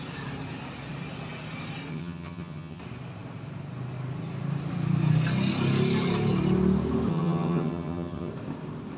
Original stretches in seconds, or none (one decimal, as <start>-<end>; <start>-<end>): 0.0-1.9; 2.8-7.1; 8.3-9.0